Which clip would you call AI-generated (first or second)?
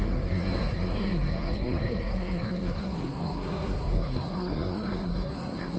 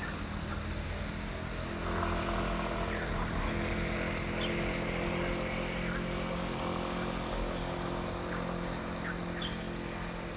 first